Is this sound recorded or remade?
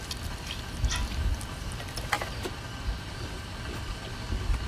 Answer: recorded